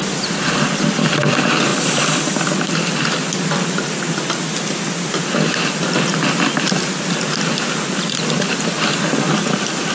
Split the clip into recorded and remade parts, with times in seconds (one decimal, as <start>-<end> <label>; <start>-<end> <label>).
0.0-9.9 recorded